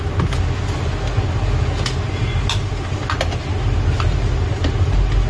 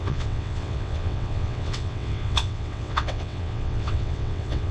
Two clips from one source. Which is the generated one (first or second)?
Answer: second